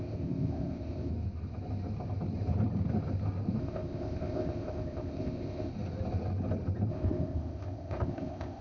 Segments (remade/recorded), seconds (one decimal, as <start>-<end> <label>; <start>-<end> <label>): 0.0-1.1 remade; 1.1-3.6 recorded; 3.6-5.7 remade; 5.7-6.9 recorded; 6.9-8.6 remade